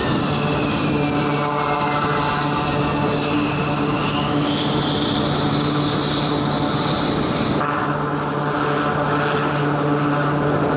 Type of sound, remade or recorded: recorded